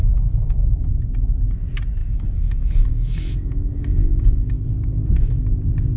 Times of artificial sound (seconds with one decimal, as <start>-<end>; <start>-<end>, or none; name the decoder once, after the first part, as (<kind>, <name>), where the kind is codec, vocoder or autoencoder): 0.0-0.9 (autoencoder, DAC-VAE); 2.0-5.4